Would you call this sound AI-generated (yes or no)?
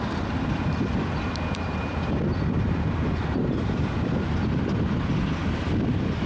yes